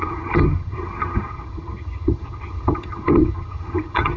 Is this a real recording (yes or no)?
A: no